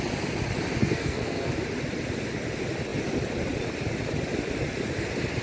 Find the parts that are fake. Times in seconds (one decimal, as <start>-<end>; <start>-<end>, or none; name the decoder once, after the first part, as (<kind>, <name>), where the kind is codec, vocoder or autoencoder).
0.8-1.5 (codec, SNAC)

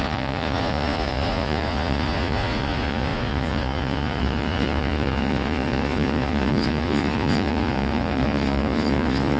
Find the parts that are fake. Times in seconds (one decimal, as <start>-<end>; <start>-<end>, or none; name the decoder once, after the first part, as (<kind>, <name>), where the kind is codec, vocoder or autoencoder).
0.0-9.4 (vocoder, Vocos)

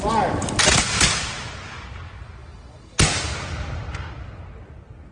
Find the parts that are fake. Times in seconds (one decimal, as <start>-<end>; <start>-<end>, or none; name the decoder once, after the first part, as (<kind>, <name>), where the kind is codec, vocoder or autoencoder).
none

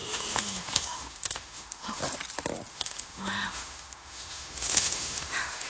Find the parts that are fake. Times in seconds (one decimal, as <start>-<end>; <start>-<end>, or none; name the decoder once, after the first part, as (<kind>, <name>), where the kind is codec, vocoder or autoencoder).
0.0-2.0 (autoencoder, DAC-VAE); 2.7-5.7